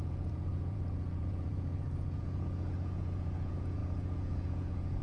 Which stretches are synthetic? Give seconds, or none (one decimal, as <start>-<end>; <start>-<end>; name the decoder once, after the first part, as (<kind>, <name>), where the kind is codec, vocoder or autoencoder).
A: 0.0-5.0 (vocoder, Vocos)